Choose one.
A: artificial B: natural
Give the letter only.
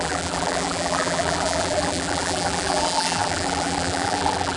A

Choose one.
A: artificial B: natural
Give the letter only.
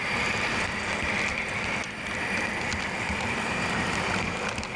B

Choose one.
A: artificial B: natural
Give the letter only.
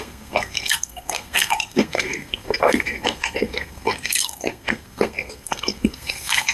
A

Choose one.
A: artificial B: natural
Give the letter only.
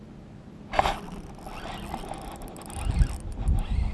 B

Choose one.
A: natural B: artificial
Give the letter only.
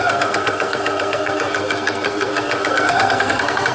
B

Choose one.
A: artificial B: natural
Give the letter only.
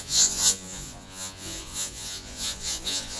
A